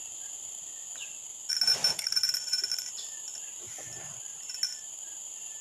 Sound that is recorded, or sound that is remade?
remade